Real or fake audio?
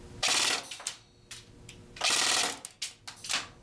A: real